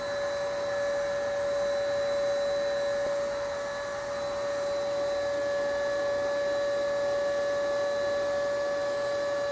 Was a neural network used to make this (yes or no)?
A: no